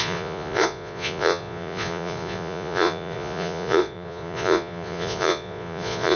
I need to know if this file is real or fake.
fake